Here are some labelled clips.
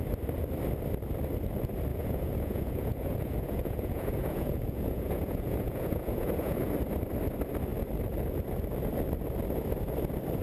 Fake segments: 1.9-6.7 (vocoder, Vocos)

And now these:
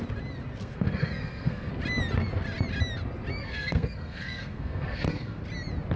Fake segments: 0.6-1.7 (codec, SNAC); 3.4-5.4

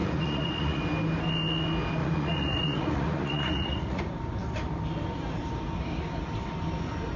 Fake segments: 0.0-0.8 (vocoder, Vocos); 2.0-4.0

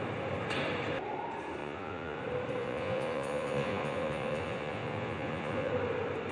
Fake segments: 1.6-2.2 (vocoder, Vocos); 2.6-5.7

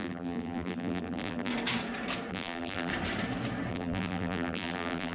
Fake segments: 0.0-1.5 (vocoder, BigVGAN v2); 2.3-2.9; 3.7-5.1